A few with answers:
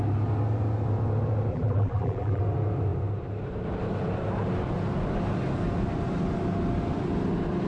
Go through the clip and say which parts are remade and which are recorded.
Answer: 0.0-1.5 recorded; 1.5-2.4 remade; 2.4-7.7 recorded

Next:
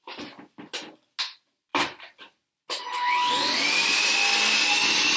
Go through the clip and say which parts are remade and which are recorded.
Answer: 0.0-5.2 recorded

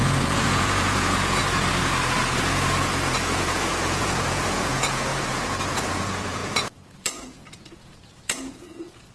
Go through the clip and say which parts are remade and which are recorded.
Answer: 0.0-1.4 remade; 1.4-2.4 recorded; 2.4-9.1 remade